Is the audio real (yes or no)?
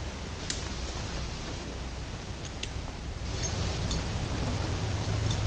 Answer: yes